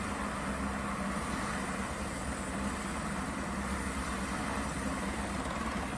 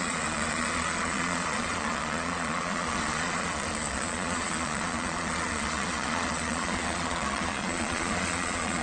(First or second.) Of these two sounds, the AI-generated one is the second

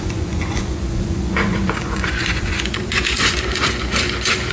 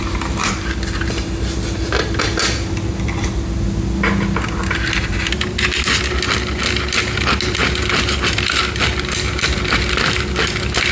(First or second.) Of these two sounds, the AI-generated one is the first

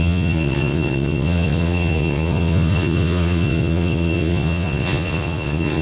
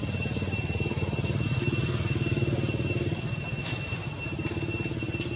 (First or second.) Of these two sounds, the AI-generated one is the first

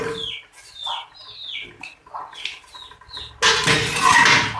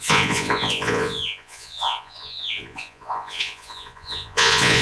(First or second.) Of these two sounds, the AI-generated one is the second